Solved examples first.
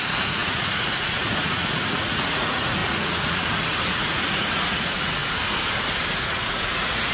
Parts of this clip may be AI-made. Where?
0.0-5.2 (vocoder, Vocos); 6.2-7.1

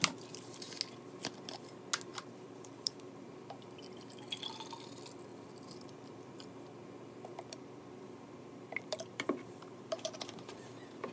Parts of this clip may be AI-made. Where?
2.1-3.5 (vocoder, BigVGAN v2); 5.3-6.3; 7.3-10.7